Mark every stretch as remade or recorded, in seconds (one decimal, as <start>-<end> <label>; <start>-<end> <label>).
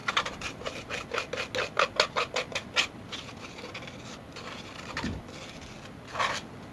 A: 0.0-0.9 remade; 0.9-6.7 recorded